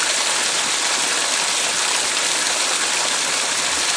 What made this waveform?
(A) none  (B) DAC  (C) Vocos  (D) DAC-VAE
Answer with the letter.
A